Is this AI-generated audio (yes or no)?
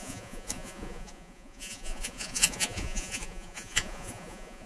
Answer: yes